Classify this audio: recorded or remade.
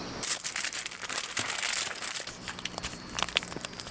recorded